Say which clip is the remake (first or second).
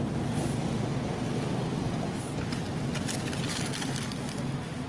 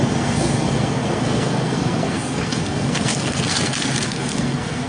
second